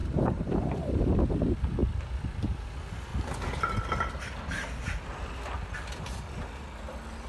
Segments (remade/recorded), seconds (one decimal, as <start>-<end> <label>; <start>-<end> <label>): 0.0-1.1 remade; 1.1-7.3 recorded